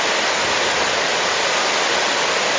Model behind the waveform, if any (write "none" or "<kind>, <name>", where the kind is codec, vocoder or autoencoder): none